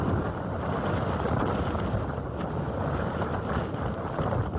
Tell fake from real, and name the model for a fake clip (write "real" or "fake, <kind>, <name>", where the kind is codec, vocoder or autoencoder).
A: real